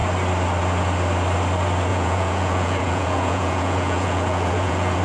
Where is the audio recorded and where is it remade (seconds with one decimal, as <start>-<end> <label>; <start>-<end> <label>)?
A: 0.0-1.9 recorded; 1.9-5.0 remade